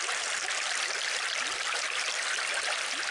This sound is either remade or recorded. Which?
recorded